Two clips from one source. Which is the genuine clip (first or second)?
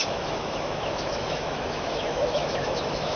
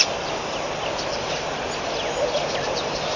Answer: second